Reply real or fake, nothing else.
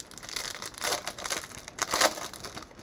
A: real